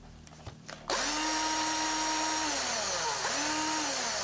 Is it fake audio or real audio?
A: fake